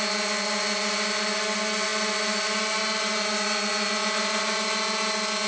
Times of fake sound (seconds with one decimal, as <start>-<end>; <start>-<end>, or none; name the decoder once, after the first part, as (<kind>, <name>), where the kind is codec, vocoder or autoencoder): none

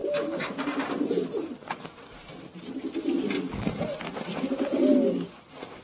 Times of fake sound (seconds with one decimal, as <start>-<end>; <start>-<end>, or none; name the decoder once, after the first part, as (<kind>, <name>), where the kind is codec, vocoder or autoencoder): 0.0-2.6 (vocoder, BigVGAN v2)

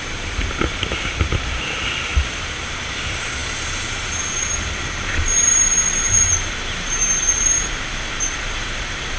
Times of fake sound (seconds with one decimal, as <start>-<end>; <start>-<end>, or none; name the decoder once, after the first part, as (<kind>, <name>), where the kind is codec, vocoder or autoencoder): 0.0-9.2 (vocoder, BigVGAN v2)

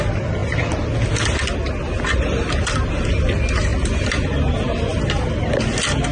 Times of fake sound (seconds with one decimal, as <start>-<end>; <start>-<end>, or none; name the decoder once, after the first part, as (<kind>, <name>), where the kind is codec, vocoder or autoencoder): none

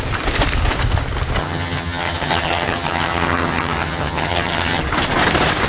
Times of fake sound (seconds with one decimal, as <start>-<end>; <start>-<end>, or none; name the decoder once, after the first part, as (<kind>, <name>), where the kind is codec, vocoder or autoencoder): 1.4-4.8 (vocoder, HiFi-GAN)

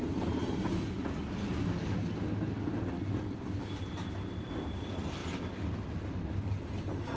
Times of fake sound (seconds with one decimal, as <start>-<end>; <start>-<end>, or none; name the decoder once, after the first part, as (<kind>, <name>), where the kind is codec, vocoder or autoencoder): none